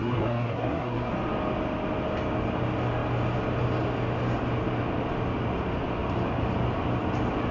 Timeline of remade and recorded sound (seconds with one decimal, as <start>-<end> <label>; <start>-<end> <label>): 0.0-1.1 remade; 1.1-7.5 recorded